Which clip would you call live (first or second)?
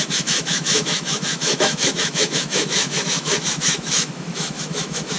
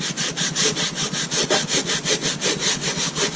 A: second